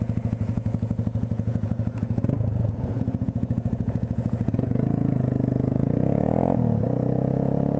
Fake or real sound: fake